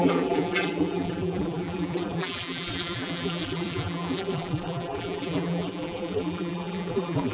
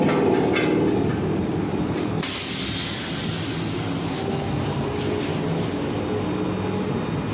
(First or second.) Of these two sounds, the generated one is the first